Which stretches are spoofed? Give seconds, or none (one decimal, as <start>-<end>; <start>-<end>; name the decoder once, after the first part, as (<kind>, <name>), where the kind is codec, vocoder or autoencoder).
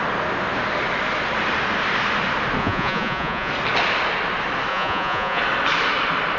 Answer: 2.6-3.5 (vocoder, Vocos); 4.7-5.4